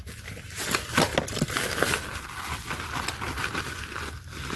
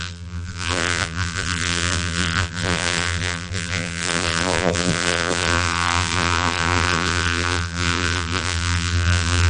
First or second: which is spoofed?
second